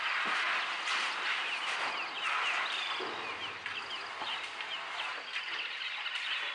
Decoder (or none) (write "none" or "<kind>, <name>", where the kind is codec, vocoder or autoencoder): none